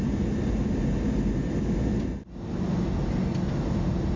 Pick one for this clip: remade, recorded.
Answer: recorded